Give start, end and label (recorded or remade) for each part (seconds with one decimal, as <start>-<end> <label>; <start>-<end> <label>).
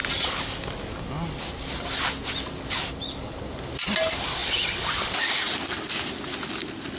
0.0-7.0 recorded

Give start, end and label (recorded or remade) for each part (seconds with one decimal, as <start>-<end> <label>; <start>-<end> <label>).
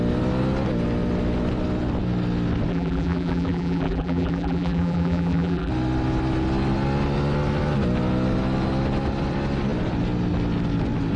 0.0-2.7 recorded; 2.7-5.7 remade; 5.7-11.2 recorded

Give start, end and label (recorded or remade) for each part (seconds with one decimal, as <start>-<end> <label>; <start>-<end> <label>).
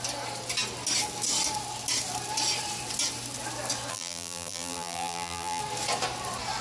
0.0-3.9 recorded; 3.9-5.6 remade; 5.6-6.6 recorded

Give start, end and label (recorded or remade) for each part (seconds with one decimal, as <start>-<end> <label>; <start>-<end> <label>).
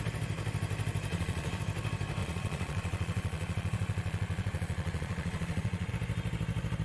0.0-1.1 recorded; 1.1-1.6 remade; 1.6-2.2 recorded; 2.2-5.9 remade; 5.9-6.8 recorded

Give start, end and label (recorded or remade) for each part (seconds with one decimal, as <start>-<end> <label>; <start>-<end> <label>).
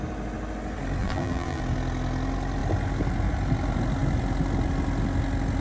0.0-1.0 recorded; 1.0-1.6 remade; 1.6-5.6 recorded